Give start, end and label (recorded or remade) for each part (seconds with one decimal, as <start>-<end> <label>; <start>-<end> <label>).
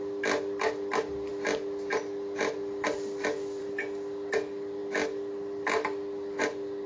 0.0-6.9 recorded